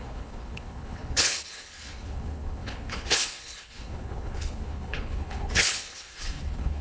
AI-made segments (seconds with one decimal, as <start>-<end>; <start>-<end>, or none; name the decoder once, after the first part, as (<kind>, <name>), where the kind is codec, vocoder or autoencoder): 0.0-6.8 (codec, HILCodec)